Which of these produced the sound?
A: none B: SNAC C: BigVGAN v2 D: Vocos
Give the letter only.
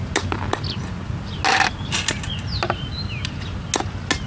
A